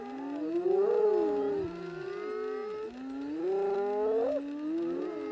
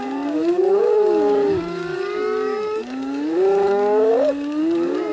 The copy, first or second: second